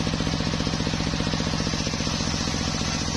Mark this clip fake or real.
real